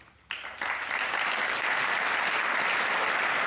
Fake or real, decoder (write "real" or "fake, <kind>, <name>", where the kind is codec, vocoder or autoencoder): real